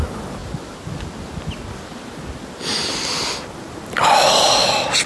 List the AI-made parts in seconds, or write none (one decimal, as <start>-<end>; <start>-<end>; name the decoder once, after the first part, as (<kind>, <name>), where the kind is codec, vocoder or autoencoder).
none